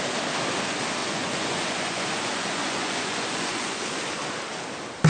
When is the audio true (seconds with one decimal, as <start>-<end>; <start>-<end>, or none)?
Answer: 0.0-1.0; 4.1-5.1